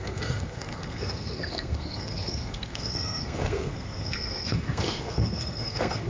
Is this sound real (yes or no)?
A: no